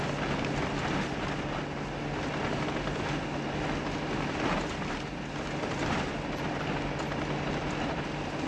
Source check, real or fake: real